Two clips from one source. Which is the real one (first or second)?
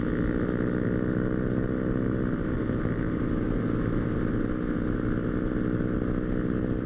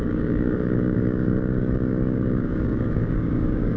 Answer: first